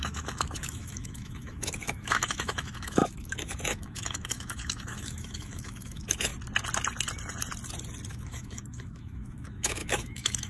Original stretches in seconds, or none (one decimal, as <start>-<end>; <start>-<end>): 6.3-8.1